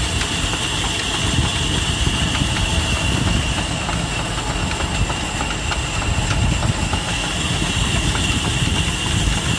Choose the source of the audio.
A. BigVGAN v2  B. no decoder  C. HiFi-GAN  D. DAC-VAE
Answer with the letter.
B